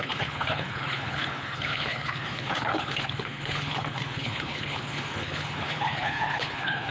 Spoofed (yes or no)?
yes